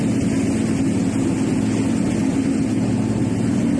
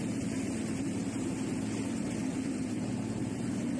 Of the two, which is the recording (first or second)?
first